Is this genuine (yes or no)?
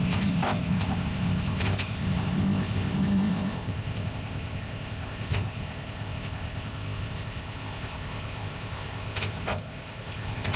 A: no